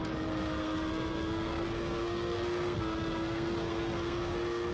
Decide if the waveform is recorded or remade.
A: remade